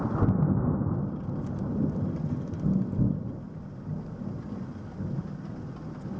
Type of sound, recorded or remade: recorded